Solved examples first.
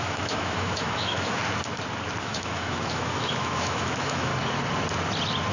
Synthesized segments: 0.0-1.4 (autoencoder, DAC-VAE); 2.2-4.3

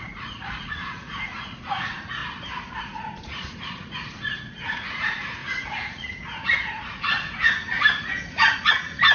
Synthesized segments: 0.0-2.2 (vocoder, Vocos); 2.8-9.1

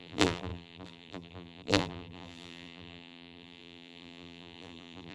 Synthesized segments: 0.0-5.1 (vocoder, BigVGAN v2)

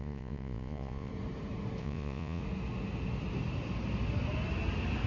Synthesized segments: 0.0-1.1 (vocoder, Vocos); 1.8-2.4

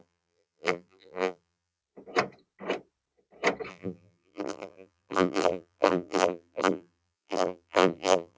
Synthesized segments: 0.0-1.8 (vocoder, BigVGAN v2); 3.7-8.4